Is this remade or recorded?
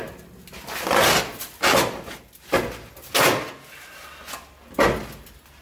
recorded